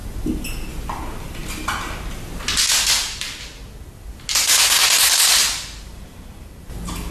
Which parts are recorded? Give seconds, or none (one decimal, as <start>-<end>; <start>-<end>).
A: 0.0-7.1